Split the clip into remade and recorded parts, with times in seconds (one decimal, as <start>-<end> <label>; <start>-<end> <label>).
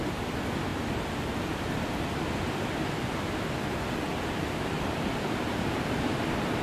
0.0-6.6 recorded